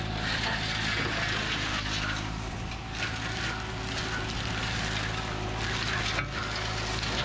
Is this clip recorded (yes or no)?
yes